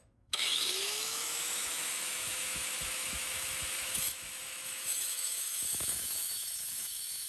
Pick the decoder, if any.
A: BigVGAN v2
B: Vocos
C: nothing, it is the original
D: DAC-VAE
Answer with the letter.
D